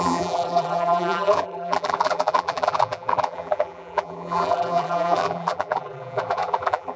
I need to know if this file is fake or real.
fake